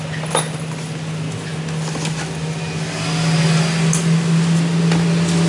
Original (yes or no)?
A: yes